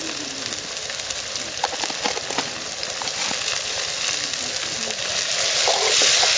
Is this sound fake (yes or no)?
no